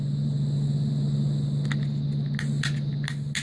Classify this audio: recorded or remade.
recorded